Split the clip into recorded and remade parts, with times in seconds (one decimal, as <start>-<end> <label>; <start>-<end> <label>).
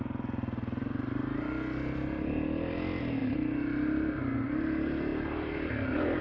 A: 0.0-6.2 recorded